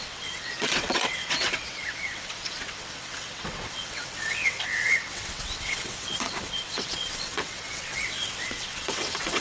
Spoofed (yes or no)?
yes